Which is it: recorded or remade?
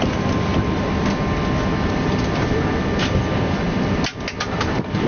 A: recorded